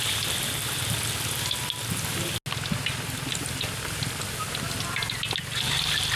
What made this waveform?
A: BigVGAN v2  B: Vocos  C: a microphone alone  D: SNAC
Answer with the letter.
C